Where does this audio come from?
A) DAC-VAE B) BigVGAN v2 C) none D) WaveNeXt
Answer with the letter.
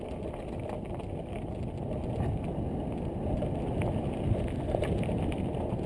C